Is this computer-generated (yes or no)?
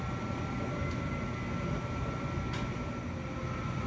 no